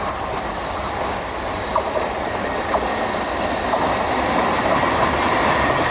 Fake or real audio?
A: real